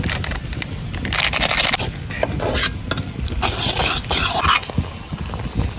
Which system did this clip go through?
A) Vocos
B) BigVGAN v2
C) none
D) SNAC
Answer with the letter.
C